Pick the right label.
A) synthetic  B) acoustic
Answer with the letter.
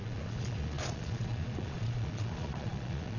A